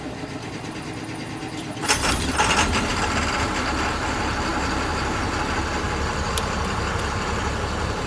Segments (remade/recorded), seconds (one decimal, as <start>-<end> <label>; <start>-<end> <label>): 0.0-8.1 recorded